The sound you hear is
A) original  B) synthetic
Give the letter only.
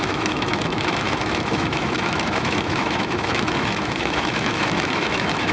B